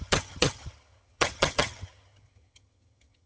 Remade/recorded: remade